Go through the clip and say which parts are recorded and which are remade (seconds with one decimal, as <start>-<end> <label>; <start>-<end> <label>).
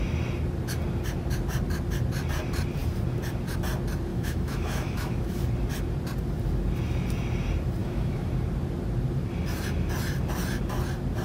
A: 0.0-4.1 recorded; 4.1-5.4 remade; 5.4-7.8 recorded; 7.8-8.3 remade; 8.3-11.2 recorded